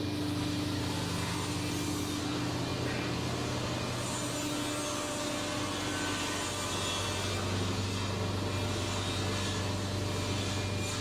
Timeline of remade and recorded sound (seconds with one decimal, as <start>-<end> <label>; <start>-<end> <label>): 0.0-11.0 recorded